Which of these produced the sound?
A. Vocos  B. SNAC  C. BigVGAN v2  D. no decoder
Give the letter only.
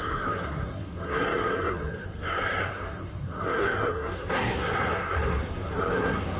B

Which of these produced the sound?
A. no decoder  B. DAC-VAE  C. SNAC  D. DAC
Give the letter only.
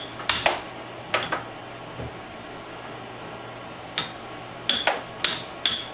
A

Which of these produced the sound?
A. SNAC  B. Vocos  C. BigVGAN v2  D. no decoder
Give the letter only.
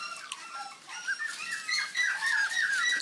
D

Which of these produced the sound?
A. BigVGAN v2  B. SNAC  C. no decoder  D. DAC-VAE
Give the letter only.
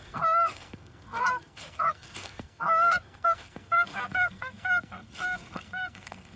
B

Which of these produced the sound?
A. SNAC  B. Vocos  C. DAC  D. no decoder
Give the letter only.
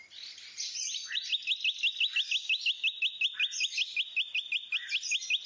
D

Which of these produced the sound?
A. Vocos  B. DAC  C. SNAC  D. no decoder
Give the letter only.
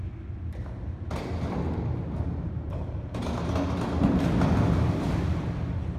D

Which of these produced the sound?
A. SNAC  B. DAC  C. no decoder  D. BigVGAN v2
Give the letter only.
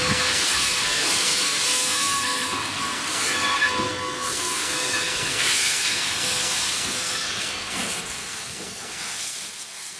A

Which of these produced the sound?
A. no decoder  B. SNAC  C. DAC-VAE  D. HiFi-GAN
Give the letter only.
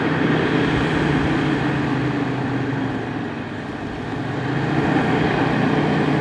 A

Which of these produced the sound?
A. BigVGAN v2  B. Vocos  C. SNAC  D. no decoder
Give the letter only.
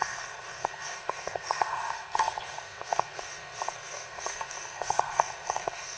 C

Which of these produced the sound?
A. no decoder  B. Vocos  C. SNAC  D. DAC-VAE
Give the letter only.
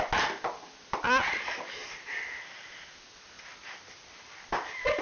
A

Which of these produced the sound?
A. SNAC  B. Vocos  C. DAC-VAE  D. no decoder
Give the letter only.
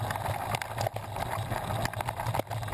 D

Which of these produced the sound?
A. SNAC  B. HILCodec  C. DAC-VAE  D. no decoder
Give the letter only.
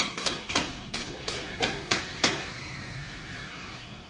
A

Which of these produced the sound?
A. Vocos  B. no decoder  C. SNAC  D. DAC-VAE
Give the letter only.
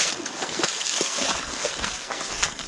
C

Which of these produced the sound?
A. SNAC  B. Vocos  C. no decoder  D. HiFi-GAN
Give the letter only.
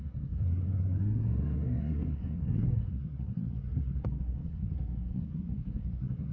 A